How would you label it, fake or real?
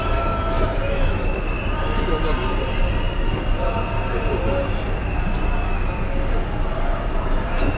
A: real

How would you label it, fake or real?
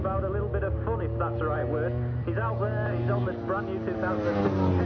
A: real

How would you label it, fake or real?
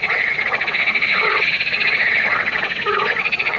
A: fake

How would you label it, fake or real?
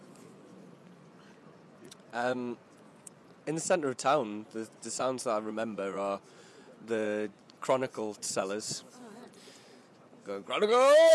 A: fake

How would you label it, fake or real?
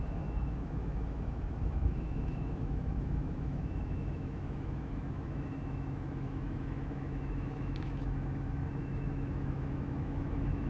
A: fake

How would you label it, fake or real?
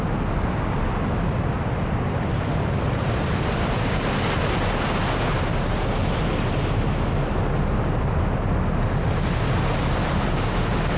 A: real